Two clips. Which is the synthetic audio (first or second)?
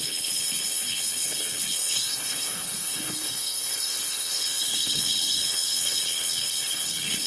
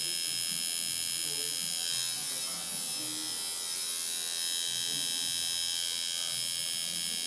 first